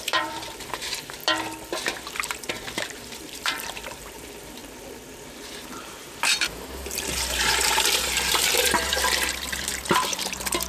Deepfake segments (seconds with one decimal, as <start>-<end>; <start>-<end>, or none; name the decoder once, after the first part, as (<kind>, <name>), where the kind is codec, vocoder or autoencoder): 0.0-1.2 (vocoder, BigVGAN v2); 2.5-4.6; 5.6-10.7